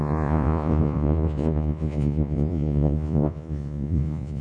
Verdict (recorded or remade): remade